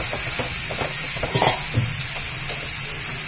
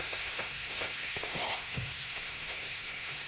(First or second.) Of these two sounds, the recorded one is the first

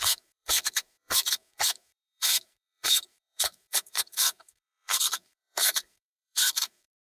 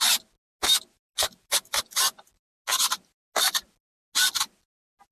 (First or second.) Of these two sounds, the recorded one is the second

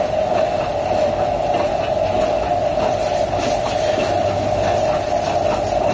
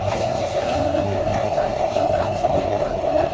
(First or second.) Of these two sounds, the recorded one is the first